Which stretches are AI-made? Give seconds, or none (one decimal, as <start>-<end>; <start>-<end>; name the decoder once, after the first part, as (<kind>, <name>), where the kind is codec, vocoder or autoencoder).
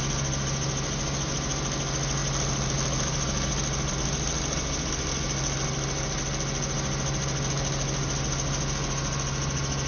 none